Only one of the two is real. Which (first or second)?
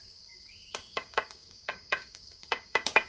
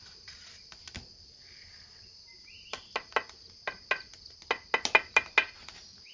second